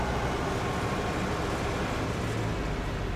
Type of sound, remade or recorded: recorded